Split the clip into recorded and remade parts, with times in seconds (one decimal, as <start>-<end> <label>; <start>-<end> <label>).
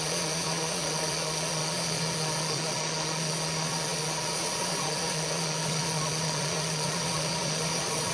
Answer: 0.0-8.1 remade